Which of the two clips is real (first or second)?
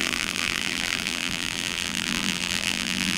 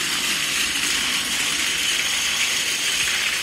second